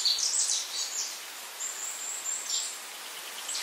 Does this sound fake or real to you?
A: real